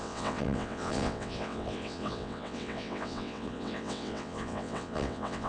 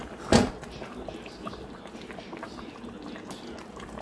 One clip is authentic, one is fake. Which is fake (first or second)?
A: first